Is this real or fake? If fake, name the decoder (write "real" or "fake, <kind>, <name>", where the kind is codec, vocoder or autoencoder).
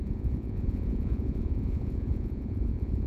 fake, vocoder, Vocos